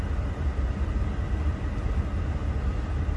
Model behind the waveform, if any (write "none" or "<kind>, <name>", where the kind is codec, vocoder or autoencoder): none